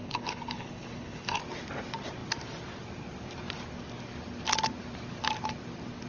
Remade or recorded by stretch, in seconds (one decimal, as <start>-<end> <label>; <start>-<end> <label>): 0.0-1.4 remade; 1.4-6.1 recorded